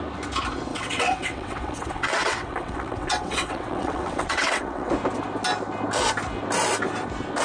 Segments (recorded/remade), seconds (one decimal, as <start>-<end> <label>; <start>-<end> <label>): 0.0-0.7 recorded; 0.7-4.9 remade; 4.9-7.4 recorded